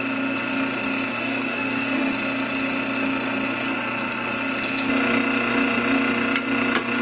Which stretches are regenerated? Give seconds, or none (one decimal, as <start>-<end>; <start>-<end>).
1.1-2.1

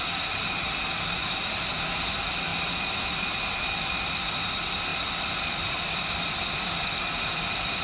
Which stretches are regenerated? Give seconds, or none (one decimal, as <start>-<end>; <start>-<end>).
none